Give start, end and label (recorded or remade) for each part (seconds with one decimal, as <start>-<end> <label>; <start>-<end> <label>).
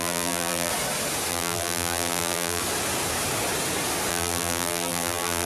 0.0-0.7 remade; 0.7-1.3 recorded; 1.3-2.6 remade; 2.6-4.1 recorded; 4.1-5.4 remade